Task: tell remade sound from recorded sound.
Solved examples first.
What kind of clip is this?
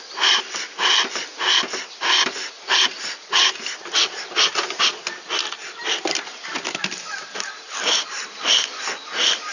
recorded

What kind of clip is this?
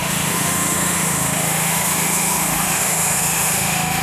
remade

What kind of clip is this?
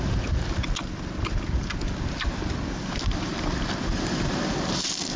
recorded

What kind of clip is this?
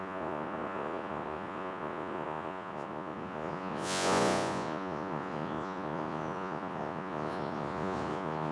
remade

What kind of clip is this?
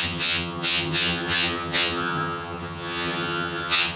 remade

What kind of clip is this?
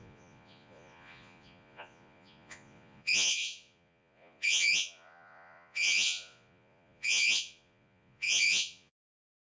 remade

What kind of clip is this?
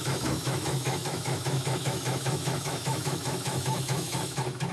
remade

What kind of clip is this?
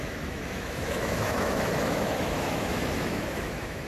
remade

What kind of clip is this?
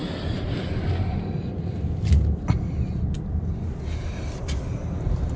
recorded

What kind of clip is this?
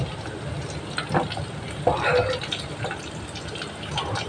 recorded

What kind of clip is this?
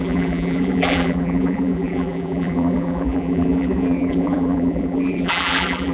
remade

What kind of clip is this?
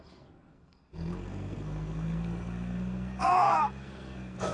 remade